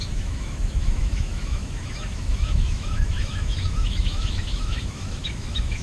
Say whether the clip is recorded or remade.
remade